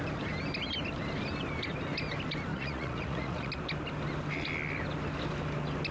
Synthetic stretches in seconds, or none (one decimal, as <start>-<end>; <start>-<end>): 2.5-3.5